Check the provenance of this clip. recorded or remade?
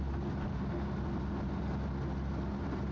recorded